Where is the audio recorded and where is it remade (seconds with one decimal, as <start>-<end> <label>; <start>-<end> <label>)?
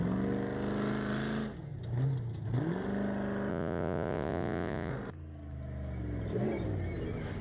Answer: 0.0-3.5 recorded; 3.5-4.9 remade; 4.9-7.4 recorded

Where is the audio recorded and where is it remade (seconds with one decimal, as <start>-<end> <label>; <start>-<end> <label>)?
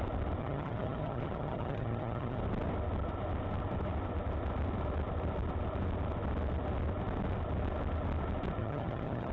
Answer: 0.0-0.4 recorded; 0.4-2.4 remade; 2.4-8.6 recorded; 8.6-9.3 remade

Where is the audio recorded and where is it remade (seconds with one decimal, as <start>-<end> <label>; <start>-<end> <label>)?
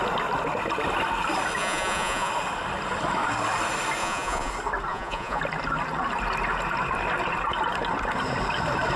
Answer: 0.0-1.6 recorded; 1.6-2.3 remade; 2.3-4.0 recorded; 4.0-4.5 remade; 4.5-4.9 recorded; 4.9-5.4 remade; 5.4-9.0 recorded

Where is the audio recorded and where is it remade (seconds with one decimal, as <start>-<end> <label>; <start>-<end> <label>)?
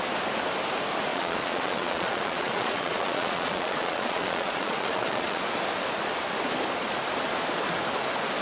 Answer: 0.0-1.1 recorded; 1.1-5.4 remade; 5.4-8.4 recorded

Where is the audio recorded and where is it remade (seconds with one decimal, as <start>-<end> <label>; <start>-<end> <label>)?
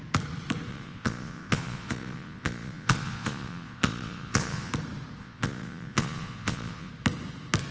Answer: 0.0-0.7 recorded; 0.7-4.7 remade; 4.7-5.2 recorded; 5.2-6.9 remade; 6.9-7.7 recorded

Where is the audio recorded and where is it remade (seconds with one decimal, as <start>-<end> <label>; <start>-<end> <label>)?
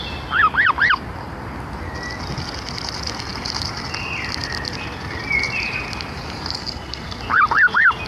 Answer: 0.0-6.6 recorded; 6.6-7.2 remade; 7.2-8.1 recorded